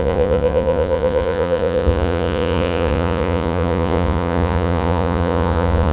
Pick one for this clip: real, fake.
fake